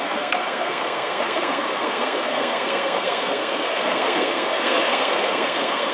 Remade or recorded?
remade